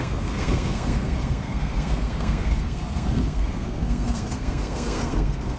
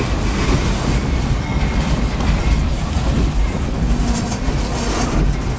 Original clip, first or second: second